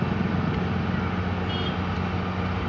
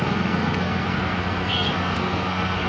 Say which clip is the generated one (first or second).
second